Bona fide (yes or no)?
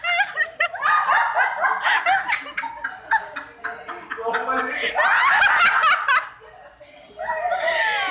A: yes